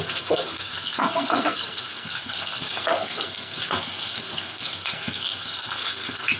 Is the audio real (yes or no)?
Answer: no